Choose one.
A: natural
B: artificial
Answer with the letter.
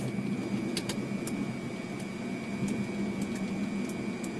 A